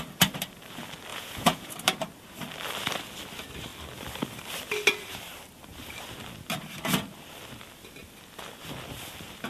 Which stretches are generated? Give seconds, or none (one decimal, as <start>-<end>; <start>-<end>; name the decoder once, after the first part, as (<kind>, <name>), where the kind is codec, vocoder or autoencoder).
1.1-1.7 (vocoder, Vocos)